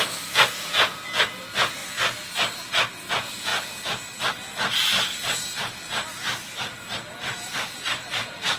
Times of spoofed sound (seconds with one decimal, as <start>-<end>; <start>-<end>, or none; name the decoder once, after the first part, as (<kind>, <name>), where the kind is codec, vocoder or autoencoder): 0.0-1.8 (vocoder, Vocos); 3.1-3.5; 8.1-8.6